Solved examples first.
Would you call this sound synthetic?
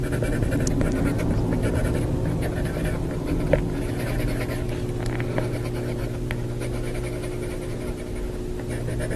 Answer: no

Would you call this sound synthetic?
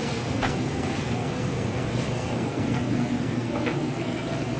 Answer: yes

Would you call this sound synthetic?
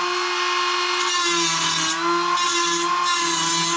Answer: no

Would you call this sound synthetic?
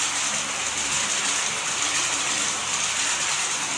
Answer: yes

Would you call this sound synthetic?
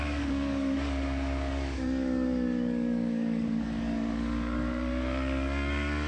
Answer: yes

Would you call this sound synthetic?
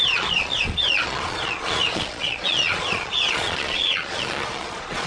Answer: yes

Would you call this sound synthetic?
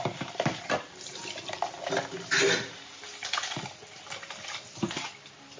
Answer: no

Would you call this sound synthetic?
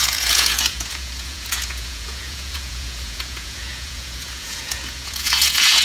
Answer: yes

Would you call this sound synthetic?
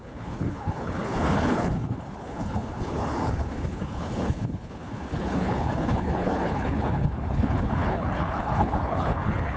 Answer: yes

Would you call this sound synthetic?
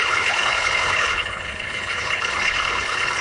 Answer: yes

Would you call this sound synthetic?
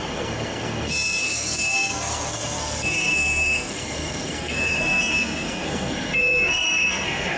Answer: yes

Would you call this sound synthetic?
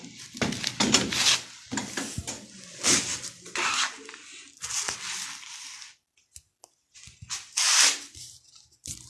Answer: no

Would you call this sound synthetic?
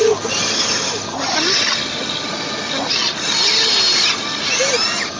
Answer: no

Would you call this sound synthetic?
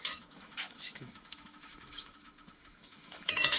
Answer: yes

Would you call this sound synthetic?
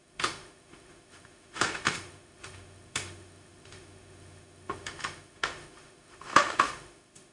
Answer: yes